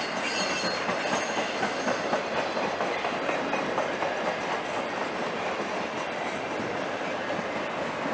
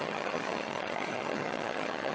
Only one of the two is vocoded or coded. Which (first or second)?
second